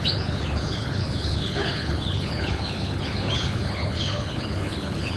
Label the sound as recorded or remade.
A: remade